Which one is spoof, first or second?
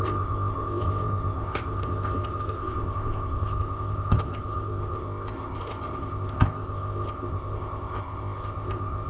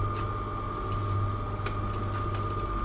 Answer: first